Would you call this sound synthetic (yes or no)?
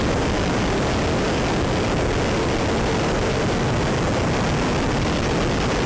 no